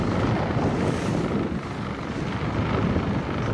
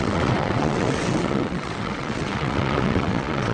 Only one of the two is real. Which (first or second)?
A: first